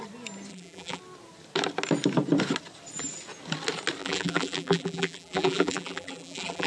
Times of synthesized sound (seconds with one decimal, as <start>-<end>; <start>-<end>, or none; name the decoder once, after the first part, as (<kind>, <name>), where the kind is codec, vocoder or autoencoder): 0.5-1.0 (vocoder, BigVGAN v2); 4.0-6.7